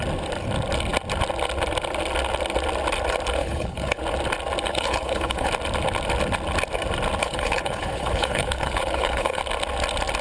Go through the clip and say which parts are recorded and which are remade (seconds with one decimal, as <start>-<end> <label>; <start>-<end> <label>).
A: 0.0-3.4 recorded; 3.4-4.0 remade; 4.0-4.7 recorded; 4.7-5.5 remade; 5.5-7.2 recorded; 7.2-9.4 remade; 9.4-10.2 recorded